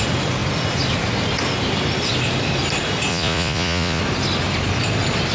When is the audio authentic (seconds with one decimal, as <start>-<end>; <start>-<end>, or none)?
0.0-3.1; 4.0-5.3